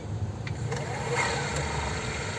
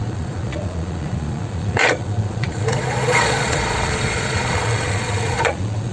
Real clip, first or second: first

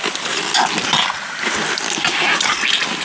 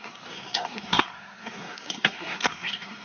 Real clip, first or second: first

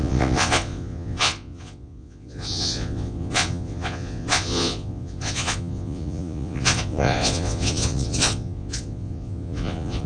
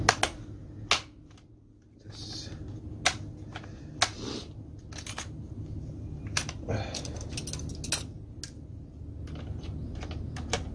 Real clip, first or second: second